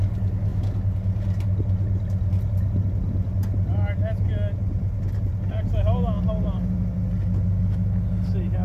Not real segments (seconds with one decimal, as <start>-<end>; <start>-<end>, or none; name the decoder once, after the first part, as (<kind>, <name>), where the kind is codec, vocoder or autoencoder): none